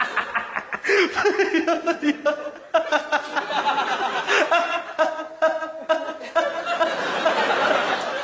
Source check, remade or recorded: recorded